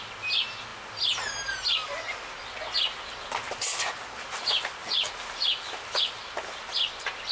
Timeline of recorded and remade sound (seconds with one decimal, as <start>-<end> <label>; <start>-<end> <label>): 0.0-7.3 recorded